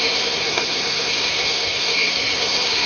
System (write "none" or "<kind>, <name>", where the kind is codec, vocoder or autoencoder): codec, SNAC